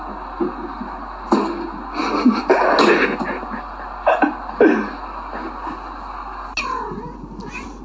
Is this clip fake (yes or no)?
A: no